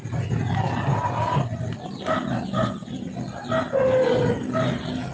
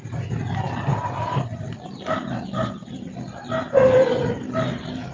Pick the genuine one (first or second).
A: first